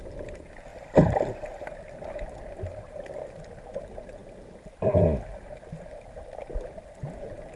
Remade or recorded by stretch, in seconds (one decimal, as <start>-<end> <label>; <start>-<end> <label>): 0.0-7.6 recorded